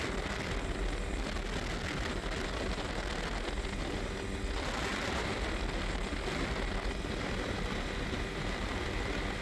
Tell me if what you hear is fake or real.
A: real